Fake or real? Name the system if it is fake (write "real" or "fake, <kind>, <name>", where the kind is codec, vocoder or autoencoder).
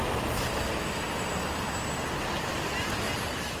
real